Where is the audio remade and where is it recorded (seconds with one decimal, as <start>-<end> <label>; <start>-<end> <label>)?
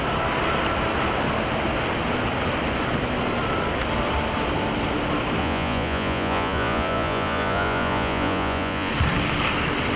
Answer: 0.0-5.4 recorded; 5.4-8.9 remade; 8.9-10.0 recorded